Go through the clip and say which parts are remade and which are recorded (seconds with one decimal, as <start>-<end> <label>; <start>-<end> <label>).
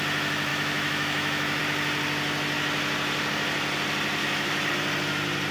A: 0.0-0.5 recorded; 0.5-1.6 remade; 1.6-4.2 recorded; 4.2-4.7 remade; 4.7-5.5 recorded